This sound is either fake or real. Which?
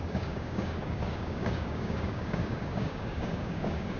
fake